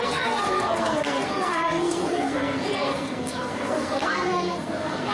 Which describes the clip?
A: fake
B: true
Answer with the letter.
A